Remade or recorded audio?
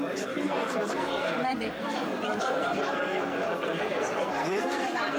remade